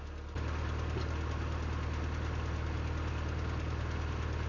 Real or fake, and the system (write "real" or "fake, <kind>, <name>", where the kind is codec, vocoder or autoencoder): real